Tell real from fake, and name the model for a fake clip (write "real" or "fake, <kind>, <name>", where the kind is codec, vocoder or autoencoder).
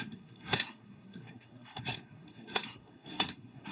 fake, codec, SNAC